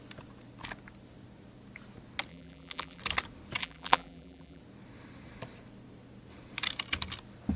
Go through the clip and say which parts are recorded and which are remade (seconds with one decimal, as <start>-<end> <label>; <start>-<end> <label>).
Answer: 0.0-2.3 recorded; 2.3-3.0 remade; 3.0-3.6 recorded; 3.6-4.6 remade; 4.6-7.6 recorded